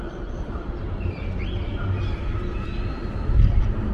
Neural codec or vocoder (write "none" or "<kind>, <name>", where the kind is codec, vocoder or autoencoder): none